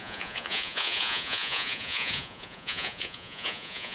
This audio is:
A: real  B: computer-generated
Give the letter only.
B